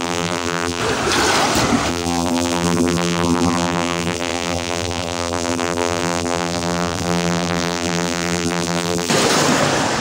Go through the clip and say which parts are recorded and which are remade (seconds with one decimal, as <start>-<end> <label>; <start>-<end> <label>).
0.0-0.8 remade; 0.8-1.9 recorded; 1.9-9.1 remade; 9.1-10.0 recorded